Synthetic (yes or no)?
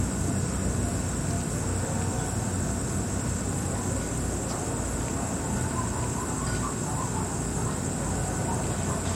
no